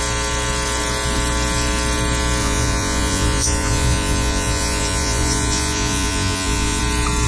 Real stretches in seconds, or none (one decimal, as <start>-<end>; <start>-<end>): 0.0-2.4; 6.8-7.3